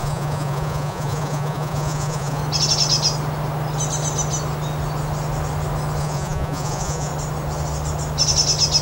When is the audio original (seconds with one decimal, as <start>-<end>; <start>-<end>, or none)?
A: 2.4-6.0; 7.1-8.8